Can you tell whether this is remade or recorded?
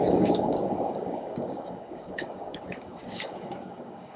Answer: remade